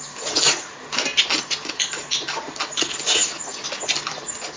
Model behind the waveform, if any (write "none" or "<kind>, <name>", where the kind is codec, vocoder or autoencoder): none